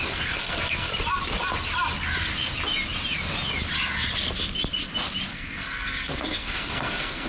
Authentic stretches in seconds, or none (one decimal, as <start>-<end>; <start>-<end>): 0.9-5.3